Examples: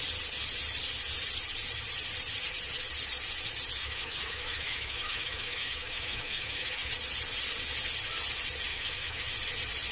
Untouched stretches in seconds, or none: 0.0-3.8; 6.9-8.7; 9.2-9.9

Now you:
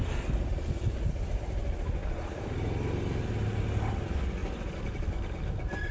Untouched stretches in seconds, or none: 0.0-5.9

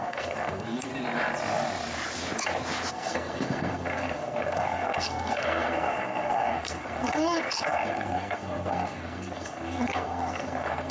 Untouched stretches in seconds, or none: 0.9-2.9

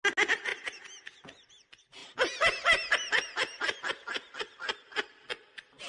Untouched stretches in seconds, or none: 0.0-5.9